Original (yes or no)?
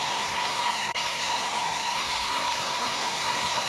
no